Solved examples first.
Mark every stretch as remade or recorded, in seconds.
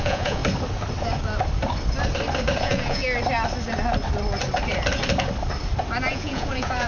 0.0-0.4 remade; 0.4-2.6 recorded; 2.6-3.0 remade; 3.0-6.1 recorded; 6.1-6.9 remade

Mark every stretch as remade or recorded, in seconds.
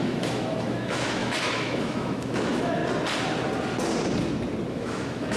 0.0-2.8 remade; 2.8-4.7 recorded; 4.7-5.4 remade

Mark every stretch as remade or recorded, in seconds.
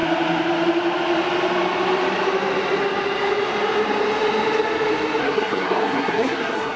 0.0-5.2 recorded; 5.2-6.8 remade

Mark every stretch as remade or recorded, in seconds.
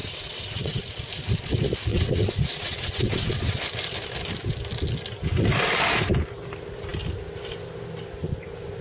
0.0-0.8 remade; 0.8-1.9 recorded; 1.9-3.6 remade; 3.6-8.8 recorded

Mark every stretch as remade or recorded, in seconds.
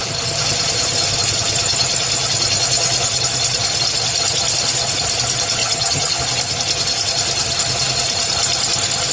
0.0-5.6 recorded; 5.6-6.2 remade; 6.2-9.1 recorded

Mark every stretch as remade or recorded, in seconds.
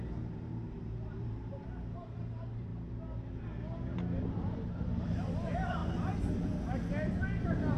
0.0-2.7 remade; 2.7-4.2 recorded; 4.2-5.8 remade; 5.8-7.8 recorded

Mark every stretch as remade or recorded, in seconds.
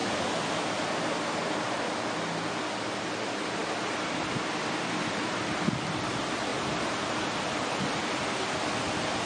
0.0-9.3 recorded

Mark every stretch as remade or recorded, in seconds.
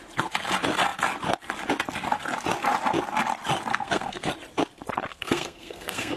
0.0-3.7 recorded; 3.7-4.3 remade; 4.3-5.1 recorded; 5.1-6.2 remade